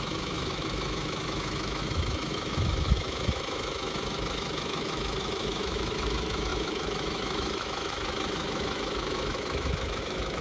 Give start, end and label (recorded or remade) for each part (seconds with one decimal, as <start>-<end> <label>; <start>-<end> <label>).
0.0-10.4 remade